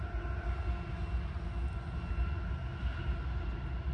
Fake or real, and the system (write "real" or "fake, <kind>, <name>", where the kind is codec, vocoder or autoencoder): real